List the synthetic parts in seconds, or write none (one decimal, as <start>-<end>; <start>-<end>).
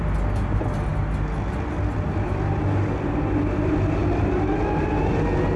none